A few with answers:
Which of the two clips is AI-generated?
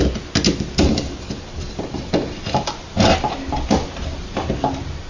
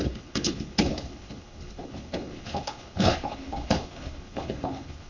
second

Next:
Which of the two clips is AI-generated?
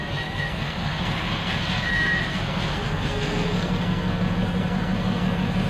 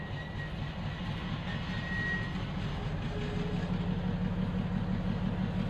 first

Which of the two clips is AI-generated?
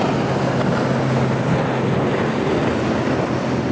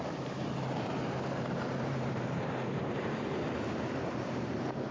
second